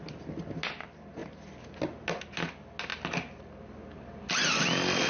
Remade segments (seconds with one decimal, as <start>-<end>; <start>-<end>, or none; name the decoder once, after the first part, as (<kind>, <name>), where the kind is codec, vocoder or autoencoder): none